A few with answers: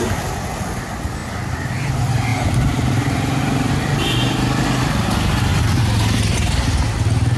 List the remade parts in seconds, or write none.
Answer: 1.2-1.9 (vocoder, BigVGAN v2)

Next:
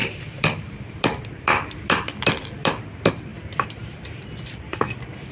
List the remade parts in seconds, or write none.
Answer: 0.0-5.3 (vocoder, BigVGAN v2)

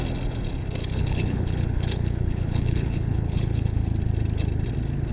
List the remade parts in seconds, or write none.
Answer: 0.8-3.9 (codec, HILCodec)

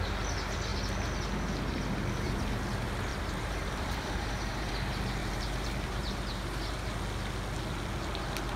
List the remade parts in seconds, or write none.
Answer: 3.1-4.7 (vocoder, BigVGAN v2); 5.2-6.9

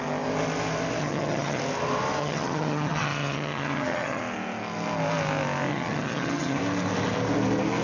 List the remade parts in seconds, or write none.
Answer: 1.0-1.6 (vocoder, HiFi-GAN); 2.2-4.2; 5.7-6.6

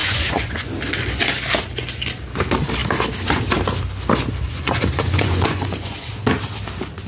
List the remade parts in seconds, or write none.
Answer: 0.0-0.7 (vocoder, Vocos); 4.5-6.1

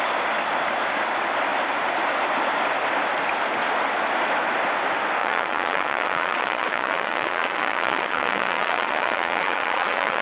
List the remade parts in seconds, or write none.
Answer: 5.2-10.2 (vocoder, Vocos)